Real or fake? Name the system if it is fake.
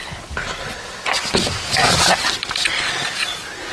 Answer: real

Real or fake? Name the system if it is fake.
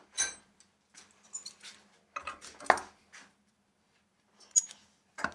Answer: real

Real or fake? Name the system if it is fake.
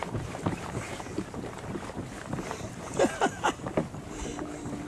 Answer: fake, vocoder, BigVGAN v2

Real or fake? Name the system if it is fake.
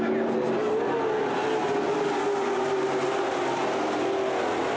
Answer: real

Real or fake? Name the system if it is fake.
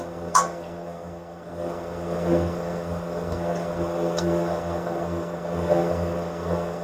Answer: fake, codec, SNAC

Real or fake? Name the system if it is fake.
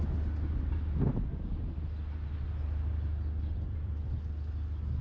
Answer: real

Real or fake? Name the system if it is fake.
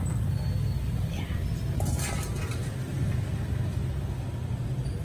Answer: real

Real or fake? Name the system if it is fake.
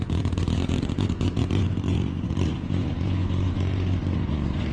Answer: fake, vocoder, Vocos